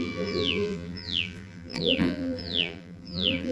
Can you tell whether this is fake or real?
fake